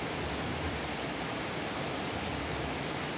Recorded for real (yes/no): yes